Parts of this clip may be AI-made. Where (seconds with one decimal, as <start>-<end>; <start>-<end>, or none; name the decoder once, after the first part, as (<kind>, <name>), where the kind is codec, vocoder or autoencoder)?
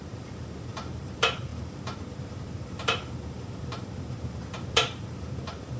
0.0-5.8 (vocoder, BigVGAN v2)